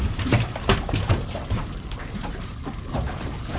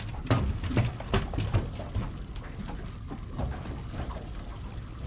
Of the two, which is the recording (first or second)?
second